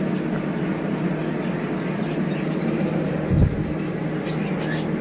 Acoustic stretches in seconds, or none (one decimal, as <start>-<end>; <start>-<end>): 1.2-1.8; 4.0-5.0